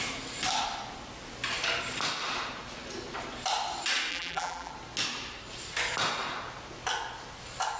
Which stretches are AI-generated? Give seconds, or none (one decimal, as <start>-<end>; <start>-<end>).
4.1-4.7